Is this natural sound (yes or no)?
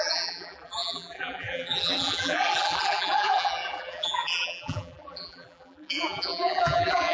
no